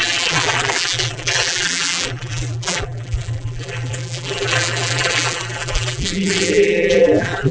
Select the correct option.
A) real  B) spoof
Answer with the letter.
B